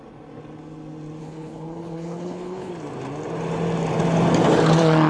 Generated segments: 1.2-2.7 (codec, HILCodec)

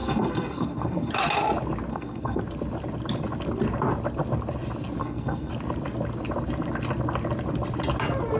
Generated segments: 0.0-1.1 (codec, SNAC); 1.9-2.4; 5.0-5.5

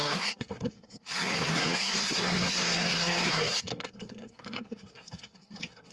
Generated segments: 0.0-5.9 (codec, SNAC)

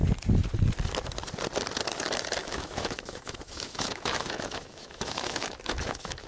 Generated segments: 2.4-6.3 (autoencoder, DAC-VAE)